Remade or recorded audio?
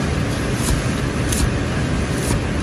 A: recorded